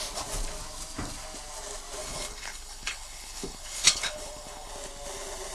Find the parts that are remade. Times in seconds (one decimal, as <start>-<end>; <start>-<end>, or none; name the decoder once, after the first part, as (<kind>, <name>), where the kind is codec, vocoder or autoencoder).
2.0-4.7 (codec, HILCodec)